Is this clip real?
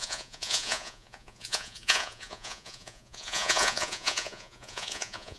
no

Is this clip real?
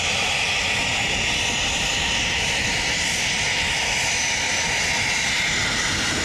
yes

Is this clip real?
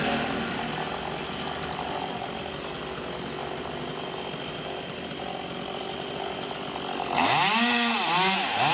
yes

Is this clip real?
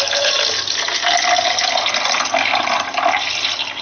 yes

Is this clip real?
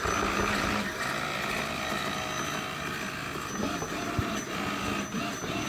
yes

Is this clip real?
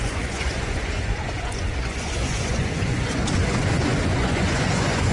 no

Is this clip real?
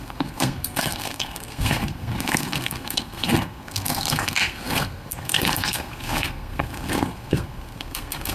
no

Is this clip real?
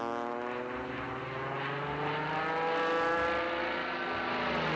yes